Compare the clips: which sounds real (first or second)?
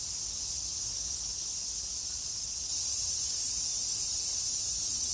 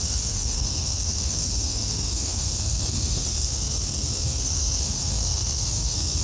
first